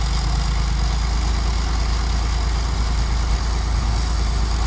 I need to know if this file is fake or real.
real